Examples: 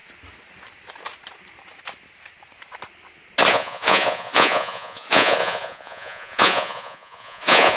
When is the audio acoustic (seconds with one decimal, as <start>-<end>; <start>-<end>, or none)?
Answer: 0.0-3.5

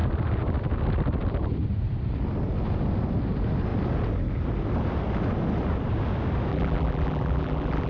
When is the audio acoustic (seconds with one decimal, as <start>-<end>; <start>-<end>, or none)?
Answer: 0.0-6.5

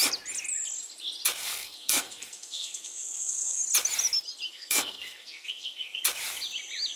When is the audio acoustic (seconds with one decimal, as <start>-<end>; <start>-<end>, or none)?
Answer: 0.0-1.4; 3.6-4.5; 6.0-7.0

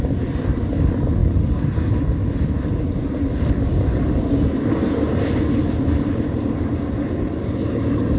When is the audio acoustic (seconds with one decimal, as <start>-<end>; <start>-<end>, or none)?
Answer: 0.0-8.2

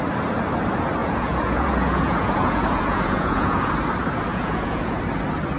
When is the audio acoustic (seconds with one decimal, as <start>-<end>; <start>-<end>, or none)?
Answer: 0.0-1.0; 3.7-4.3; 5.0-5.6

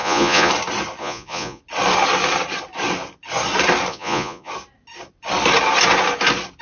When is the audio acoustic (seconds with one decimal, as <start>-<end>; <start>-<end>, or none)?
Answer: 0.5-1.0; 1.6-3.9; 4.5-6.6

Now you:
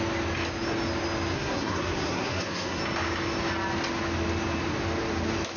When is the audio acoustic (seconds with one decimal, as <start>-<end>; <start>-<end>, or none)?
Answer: 0.0-1.3; 2.8-5.6

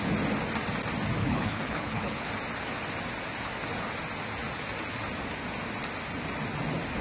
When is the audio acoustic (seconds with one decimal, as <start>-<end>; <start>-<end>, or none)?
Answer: 0.0-1.2; 2.3-7.0